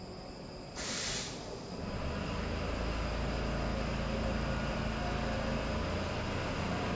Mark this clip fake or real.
real